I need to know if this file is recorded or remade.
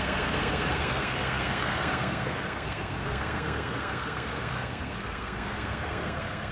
remade